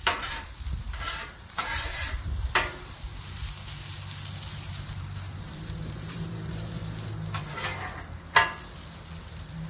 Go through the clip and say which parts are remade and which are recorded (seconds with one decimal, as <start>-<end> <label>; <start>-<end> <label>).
0.0-2.3 remade; 2.3-4.5 recorded; 4.5-6.8 remade; 6.8-9.2 recorded; 9.2-9.7 remade